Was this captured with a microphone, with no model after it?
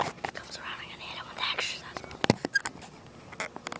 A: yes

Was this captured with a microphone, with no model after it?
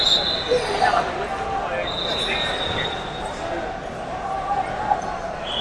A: yes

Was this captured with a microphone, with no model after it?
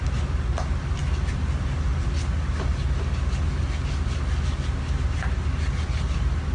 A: yes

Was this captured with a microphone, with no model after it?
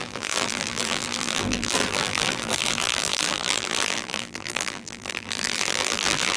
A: no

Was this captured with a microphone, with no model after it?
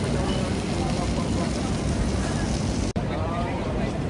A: no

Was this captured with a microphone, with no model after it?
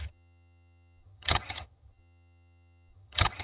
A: no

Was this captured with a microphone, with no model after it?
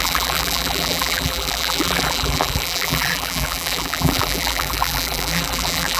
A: no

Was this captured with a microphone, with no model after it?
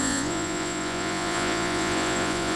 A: no